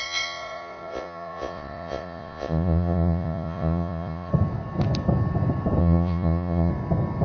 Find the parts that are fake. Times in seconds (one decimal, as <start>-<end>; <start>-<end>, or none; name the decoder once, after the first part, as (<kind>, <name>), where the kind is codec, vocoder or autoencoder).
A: 0.0-4.3 (vocoder, Vocos); 5.8-6.7